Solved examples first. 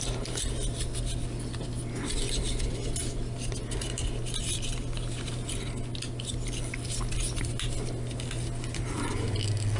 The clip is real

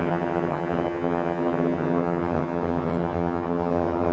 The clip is fake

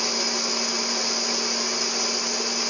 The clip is real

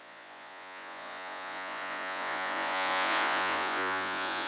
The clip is fake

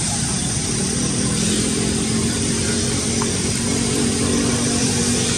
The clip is fake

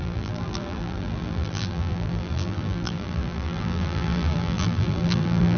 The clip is fake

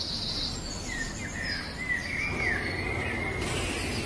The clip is real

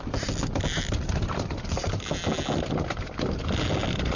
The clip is real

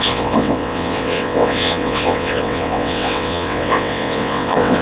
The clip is fake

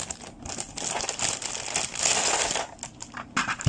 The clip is real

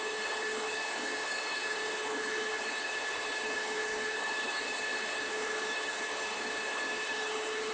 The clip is fake